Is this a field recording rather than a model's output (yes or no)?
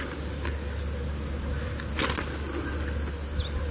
yes